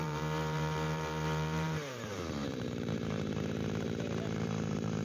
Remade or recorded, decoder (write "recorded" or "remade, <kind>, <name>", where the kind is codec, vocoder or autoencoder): remade, vocoder, BigVGAN v2